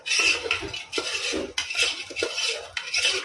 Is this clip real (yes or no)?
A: yes